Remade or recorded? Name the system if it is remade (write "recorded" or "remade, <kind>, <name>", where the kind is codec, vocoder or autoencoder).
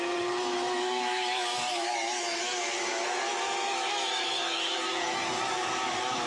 remade, autoencoder, DAC-VAE